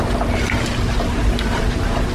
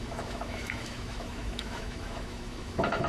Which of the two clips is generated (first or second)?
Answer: second